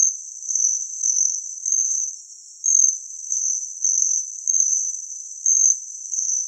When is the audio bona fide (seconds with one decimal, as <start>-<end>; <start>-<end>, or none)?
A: 2.1-2.8